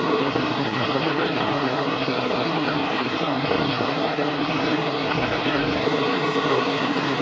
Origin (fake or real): fake